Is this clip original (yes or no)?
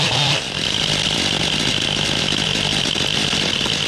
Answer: yes